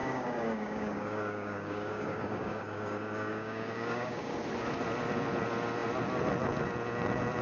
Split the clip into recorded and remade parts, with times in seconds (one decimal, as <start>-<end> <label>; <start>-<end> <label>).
0.0-4.3 remade; 4.3-7.4 recorded